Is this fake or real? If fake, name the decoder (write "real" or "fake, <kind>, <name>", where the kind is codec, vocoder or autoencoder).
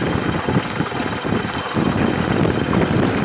real